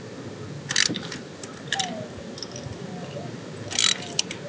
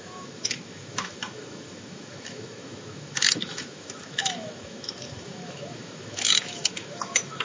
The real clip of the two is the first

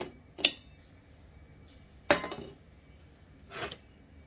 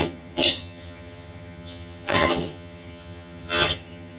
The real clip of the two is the first